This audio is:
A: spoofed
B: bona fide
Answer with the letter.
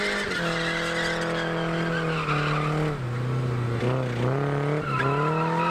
B